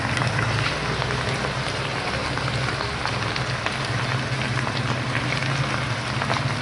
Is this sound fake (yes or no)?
no